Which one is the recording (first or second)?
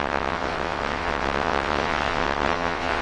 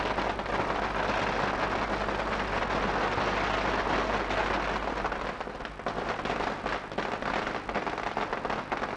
second